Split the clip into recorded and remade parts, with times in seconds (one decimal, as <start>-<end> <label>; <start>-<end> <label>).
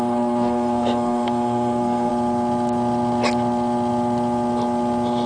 0.0-2.1 remade; 2.1-5.3 recorded